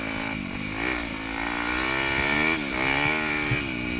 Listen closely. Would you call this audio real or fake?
real